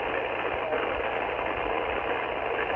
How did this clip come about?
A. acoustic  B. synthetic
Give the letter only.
A